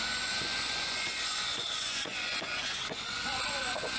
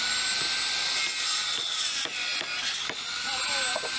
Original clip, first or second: second